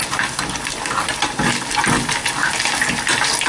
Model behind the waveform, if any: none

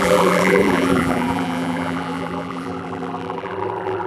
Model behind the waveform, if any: vocoder, BigVGAN v2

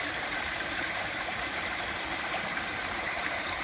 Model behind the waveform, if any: vocoder, BigVGAN v2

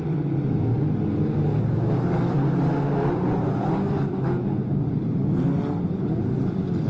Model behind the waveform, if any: none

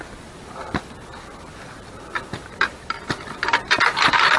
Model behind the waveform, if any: vocoder, BigVGAN v2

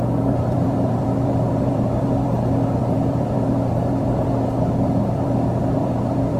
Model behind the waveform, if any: vocoder, BigVGAN v2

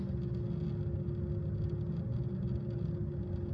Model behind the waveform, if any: none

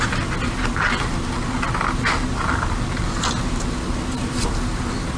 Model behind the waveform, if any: none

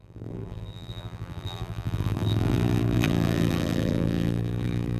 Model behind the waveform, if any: vocoder, BigVGAN v2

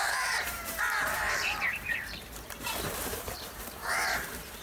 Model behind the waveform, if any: vocoder, BigVGAN v2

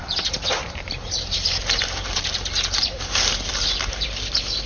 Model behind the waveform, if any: vocoder, BigVGAN v2